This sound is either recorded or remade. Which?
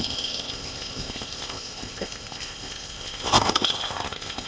remade